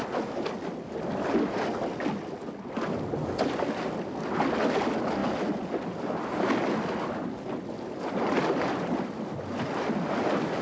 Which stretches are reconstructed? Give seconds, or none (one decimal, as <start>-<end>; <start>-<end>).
none